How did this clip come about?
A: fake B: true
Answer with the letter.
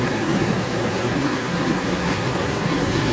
A